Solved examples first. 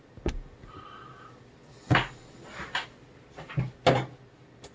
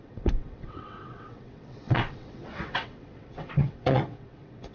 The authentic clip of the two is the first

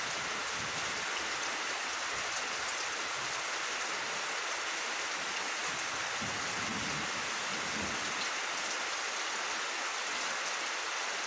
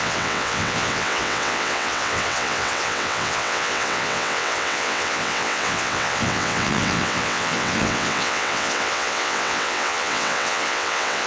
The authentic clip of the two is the first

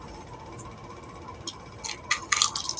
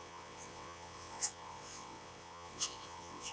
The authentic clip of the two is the first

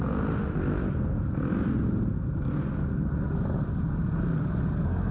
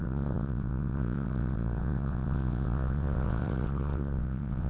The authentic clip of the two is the first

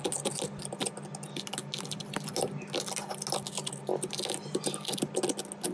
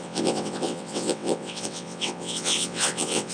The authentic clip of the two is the first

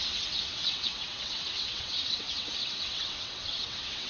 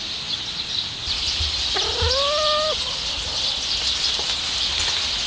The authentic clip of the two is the second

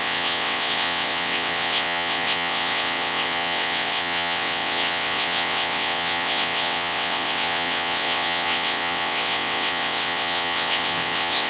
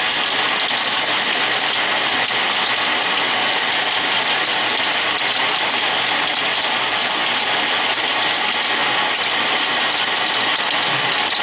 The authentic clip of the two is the second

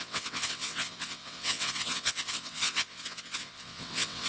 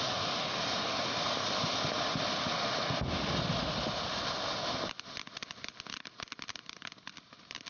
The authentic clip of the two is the second